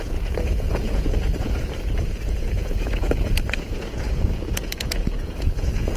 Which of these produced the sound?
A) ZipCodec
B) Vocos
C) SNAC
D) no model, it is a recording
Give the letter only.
B